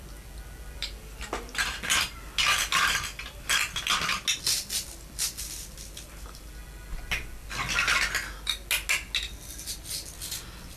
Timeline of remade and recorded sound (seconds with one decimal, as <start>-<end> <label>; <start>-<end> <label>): 0.0-10.8 recorded